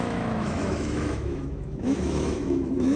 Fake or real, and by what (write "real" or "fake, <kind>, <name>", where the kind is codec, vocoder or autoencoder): fake, autoencoder, DAC-VAE